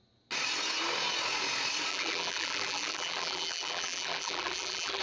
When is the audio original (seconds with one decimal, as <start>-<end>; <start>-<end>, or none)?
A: 0.0-1.9